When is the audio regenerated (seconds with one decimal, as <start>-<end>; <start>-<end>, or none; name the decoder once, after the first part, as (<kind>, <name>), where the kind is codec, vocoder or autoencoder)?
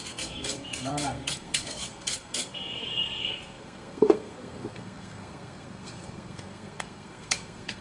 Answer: 0.0-7.8 (codec, SNAC)